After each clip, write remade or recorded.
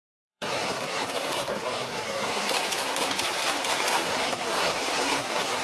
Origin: remade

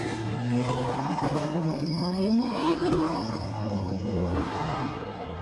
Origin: remade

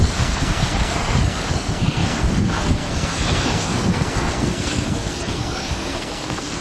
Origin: remade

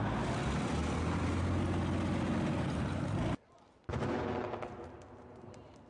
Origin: recorded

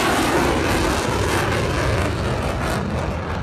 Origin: recorded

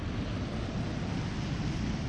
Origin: recorded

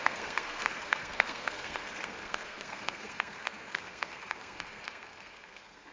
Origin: remade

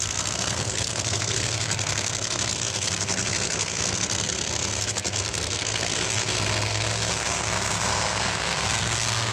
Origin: remade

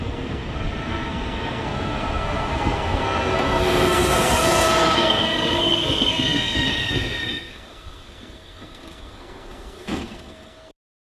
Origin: remade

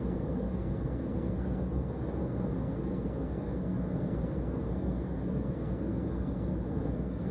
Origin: remade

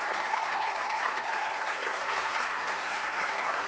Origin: remade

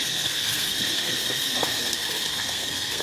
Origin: remade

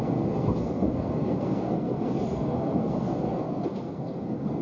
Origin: remade